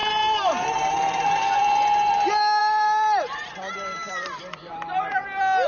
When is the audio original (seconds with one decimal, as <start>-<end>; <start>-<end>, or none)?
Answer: 2.1-2.6; 5.1-5.7